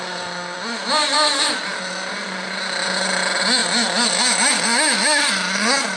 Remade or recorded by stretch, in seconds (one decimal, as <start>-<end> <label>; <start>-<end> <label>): 0.0-6.0 recorded